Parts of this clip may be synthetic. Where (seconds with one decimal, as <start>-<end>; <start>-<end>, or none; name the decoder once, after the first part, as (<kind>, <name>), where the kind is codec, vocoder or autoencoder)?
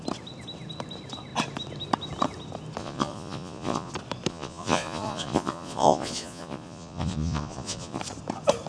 2.8-3.9 (vocoder, Vocos); 4.3-8.0